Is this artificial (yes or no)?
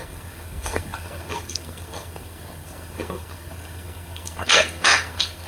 yes